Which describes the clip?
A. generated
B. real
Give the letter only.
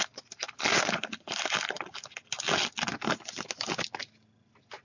B